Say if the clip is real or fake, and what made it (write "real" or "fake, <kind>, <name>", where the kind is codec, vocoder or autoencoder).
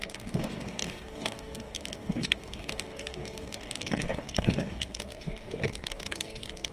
fake, codec, DAC